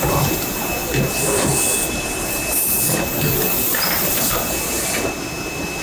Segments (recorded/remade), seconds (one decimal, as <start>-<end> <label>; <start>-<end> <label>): 0.0-5.8 recorded